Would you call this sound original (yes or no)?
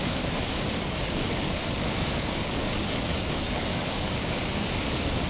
no